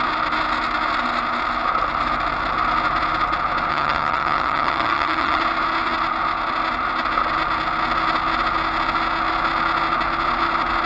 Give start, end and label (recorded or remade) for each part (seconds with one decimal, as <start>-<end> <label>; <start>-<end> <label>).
0.0-3.7 recorded; 3.7-5.4 remade; 5.4-10.9 recorded